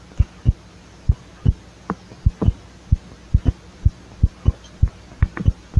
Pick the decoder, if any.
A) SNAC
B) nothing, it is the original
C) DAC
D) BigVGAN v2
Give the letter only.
B